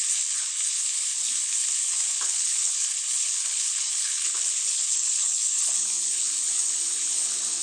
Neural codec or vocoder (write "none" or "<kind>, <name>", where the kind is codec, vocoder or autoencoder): codec, HILCodec